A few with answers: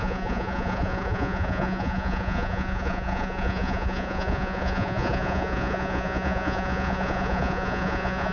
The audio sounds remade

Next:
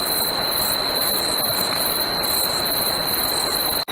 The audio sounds remade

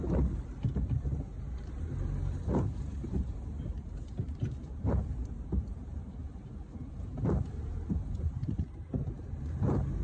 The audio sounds remade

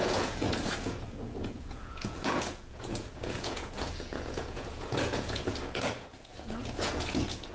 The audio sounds remade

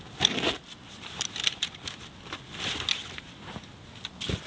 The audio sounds recorded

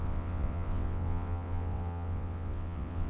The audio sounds remade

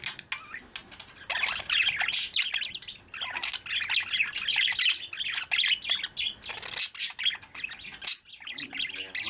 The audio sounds recorded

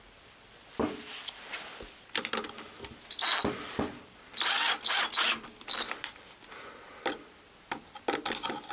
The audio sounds recorded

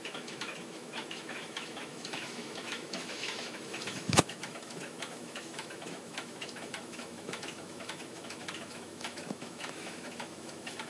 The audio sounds remade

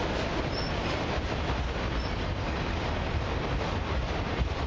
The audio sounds recorded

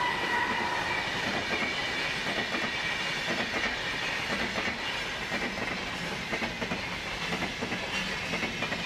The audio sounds recorded